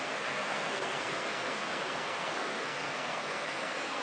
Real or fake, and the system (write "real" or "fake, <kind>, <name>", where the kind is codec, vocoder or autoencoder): fake, codec, SNAC